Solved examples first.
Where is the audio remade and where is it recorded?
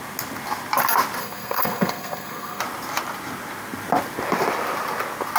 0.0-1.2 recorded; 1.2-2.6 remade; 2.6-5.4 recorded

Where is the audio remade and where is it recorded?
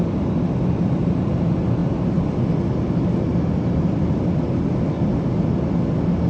0.0-6.3 recorded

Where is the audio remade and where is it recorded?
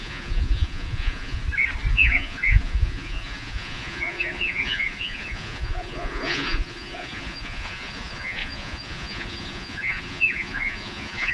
0.0-1.4 remade; 1.4-1.9 recorded; 1.9-11.3 remade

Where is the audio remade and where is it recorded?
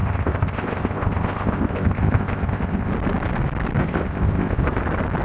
0.0-2.9 remade; 2.9-3.8 recorded; 3.8-4.8 remade; 4.8-5.2 recorded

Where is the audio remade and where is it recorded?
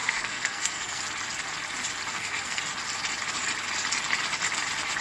0.0-1.0 remade; 1.0-2.1 recorded; 2.1-2.6 remade; 2.6-5.0 recorded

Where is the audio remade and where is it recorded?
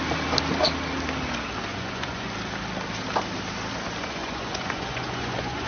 0.0-1.7 recorded; 1.7-2.3 remade; 2.3-4.0 recorded; 4.0-5.7 remade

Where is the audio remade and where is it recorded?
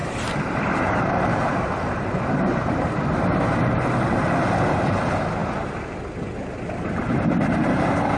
0.0-4.9 remade; 4.9-8.2 recorded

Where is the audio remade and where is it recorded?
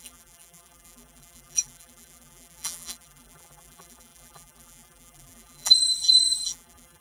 0.0-7.0 remade